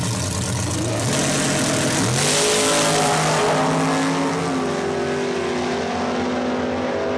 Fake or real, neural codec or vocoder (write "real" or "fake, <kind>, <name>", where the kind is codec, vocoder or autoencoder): real